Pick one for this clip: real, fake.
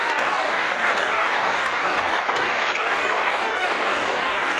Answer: fake